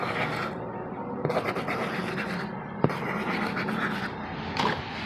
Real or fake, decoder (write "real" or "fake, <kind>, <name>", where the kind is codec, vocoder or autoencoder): real